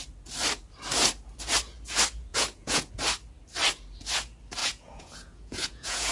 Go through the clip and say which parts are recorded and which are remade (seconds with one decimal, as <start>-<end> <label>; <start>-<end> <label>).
0.0-2.3 recorded; 2.3-2.9 remade; 2.9-4.6 recorded; 4.6-6.1 remade